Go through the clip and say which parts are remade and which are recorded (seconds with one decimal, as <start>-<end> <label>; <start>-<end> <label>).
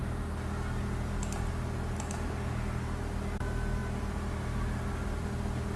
0.0-1.5 remade; 1.5-3.8 recorded; 3.8-4.4 remade; 4.4-5.8 recorded